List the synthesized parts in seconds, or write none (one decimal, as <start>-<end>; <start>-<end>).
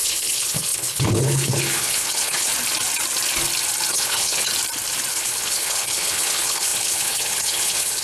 0.0-2.5; 3.9-4.5; 5.1-8.0